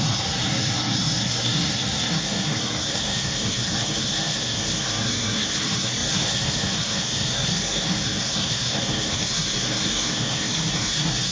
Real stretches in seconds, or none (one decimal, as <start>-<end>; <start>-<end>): none